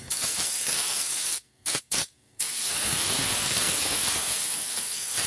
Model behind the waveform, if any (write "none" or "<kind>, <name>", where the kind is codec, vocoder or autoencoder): codec, SNAC